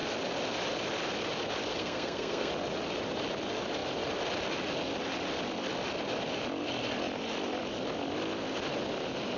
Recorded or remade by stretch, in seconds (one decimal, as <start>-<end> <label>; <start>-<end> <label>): 0.0-1.7 recorded; 1.7-2.5 remade; 2.5-9.4 recorded